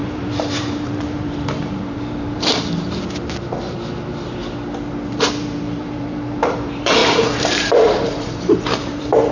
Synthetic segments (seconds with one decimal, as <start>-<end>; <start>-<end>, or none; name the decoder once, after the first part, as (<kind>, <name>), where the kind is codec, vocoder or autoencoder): 0.0-4.4 (vocoder, BigVGAN v2); 5.1-9.3